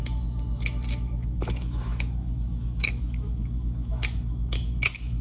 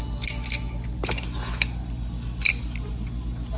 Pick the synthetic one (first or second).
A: first